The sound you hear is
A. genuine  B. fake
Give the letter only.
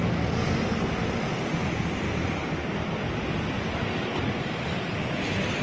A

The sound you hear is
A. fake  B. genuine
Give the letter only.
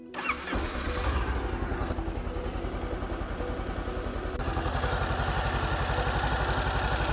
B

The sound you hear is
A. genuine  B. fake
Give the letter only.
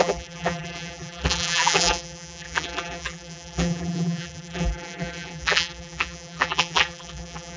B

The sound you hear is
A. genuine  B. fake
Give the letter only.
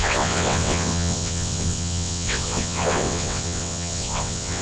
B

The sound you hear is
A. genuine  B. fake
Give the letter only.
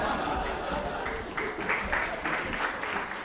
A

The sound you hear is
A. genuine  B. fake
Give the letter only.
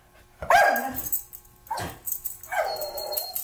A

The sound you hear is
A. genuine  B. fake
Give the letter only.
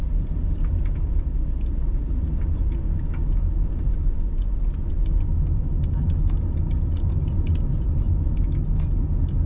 A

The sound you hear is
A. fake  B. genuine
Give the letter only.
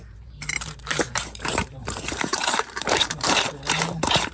A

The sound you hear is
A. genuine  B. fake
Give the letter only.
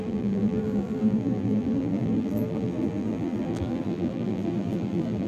B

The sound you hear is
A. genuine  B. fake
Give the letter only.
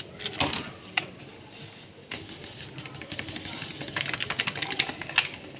A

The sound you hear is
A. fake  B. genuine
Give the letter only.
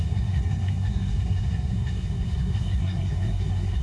A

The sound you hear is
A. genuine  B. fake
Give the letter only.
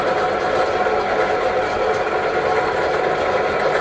A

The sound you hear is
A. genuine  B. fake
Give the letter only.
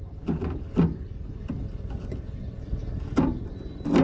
A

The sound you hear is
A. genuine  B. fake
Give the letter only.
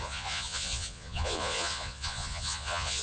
B